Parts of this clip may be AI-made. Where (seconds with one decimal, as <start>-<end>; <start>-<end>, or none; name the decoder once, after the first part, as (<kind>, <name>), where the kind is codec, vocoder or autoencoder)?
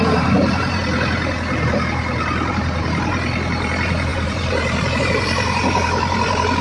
0.0-0.8 (vocoder, BigVGAN v2); 2.5-6.6